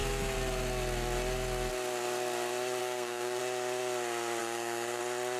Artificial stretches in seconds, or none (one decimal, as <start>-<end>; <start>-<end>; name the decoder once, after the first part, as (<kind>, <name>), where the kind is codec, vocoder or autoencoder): 2.8-3.4 (codec, SNAC); 4.4-5.0